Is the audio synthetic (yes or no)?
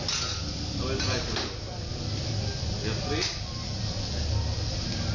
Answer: no